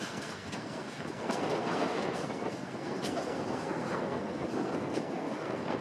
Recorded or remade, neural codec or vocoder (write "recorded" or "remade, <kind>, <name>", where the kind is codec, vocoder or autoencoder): remade, codec, SNAC